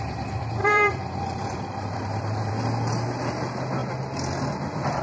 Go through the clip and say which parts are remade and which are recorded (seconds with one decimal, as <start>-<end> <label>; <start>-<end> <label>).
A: 0.0-0.6 recorded; 0.6-2.5 remade; 2.5-3.8 recorded; 3.8-5.0 remade